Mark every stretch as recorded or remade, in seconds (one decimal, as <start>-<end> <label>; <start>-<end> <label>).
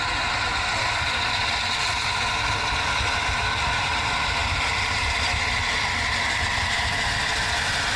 0.0-4.4 recorded; 4.4-5.6 remade; 5.6-8.0 recorded